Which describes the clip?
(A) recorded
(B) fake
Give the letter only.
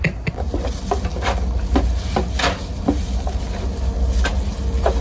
A